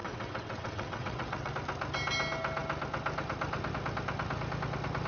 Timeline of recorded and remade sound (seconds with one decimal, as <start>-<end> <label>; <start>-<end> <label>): 0.0-1.5 remade; 1.5-5.1 recorded

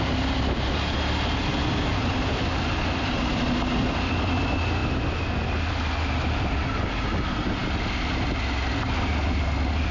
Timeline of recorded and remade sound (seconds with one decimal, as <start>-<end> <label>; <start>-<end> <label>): 0.0-1.9 recorded; 1.9-3.7 remade; 3.7-9.9 recorded

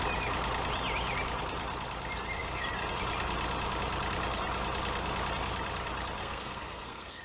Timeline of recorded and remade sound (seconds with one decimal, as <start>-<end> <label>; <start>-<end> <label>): 0.0-6.2 recorded; 6.2-7.2 remade